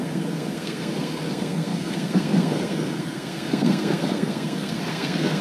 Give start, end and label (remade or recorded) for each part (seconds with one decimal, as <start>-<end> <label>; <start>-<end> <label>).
0.0-5.4 remade